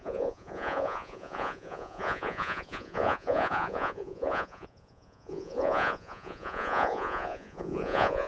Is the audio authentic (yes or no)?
no